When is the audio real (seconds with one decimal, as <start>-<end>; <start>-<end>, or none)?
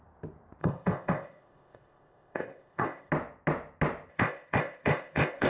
0.0-0.6; 3.1-4.1